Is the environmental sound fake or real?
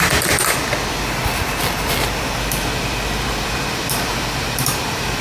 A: fake